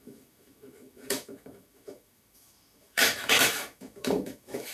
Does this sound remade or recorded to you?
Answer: remade